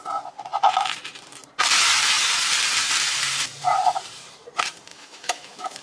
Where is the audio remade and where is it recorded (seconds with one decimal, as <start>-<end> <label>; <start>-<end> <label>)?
0.0-4.9 recorded; 4.9-5.8 remade